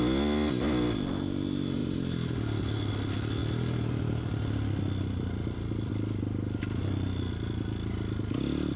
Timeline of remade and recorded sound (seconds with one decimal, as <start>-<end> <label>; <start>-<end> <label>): 0.0-3.4 recorded; 3.4-5.9 remade; 5.9-8.8 recorded

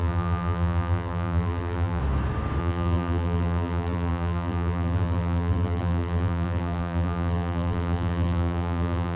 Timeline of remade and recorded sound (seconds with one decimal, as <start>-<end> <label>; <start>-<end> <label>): 0.0-2.0 remade; 2.0-2.6 recorded; 2.6-9.2 remade